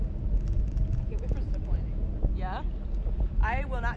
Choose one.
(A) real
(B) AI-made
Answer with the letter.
A